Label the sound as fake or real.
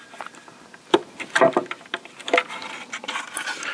real